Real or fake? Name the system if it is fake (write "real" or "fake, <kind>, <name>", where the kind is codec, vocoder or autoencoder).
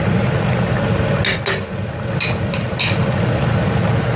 real